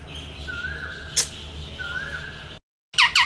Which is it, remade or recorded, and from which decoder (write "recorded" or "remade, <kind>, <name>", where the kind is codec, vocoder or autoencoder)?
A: recorded